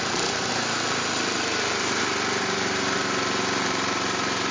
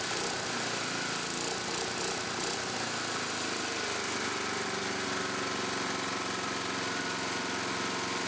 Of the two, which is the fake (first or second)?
first